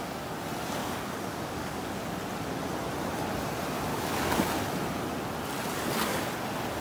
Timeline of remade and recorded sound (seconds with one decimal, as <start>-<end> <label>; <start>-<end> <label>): 0.0-0.8 recorded; 0.8-1.8 remade; 1.8-3.9 recorded; 3.9-4.5 remade; 4.5-6.8 recorded